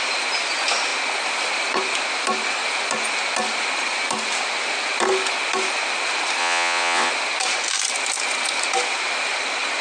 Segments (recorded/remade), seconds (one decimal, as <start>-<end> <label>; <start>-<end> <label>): 0.0-6.4 recorded; 6.4-7.1 remade; 7.1-9.8 recorded